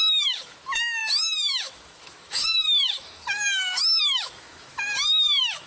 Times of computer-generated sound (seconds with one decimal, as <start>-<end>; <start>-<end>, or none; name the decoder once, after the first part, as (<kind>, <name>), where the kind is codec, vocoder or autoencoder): 0.0-5.7 (autoencoder, DAC-VAE)